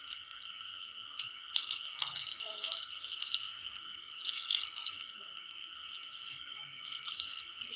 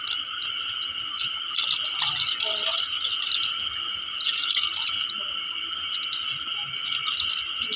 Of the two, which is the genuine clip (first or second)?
second